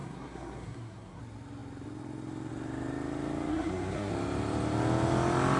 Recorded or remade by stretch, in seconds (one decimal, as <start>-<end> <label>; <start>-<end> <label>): 0.0-1.2 remade; 1.2-3.5 recorded; 3.5-4.1 remade; 4.1-5.6 recorded